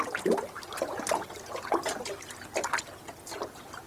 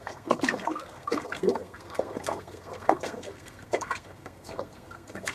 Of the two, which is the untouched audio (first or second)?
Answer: first